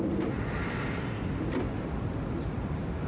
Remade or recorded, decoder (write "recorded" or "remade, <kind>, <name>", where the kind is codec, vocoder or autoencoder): recorded